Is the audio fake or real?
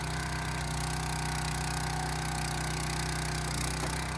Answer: real